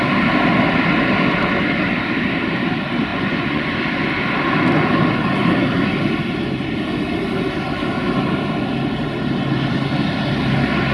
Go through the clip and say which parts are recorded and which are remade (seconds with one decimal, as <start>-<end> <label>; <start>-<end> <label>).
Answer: 0.0-3.1 recorded; 3.1-3.7 remade; 3.7-10.9 recorded